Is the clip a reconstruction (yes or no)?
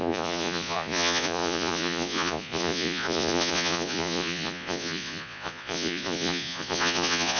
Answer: yes